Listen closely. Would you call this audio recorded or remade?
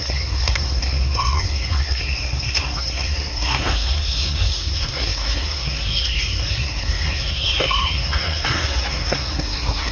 remade